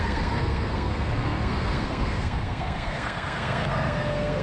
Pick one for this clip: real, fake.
fake